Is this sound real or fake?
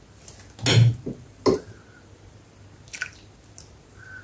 real